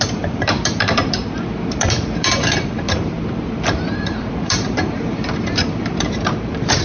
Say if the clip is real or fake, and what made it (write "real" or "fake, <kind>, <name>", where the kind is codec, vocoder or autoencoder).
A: fake, vocoder, BigVGAN v2